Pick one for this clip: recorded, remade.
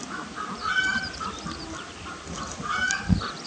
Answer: recorded